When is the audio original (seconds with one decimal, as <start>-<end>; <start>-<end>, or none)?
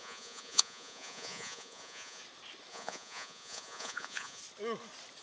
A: 2.2-2.7; 4.4-5.2